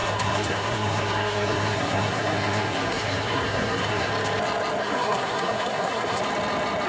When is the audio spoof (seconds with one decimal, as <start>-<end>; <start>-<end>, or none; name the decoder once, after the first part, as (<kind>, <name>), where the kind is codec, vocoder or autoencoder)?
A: 0.0-4.1 (codec, SNAC); 4.8-6.2